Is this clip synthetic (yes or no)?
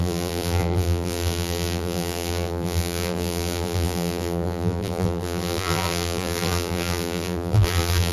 yes